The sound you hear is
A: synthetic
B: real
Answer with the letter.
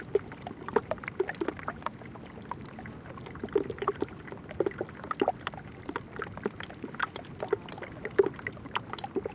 B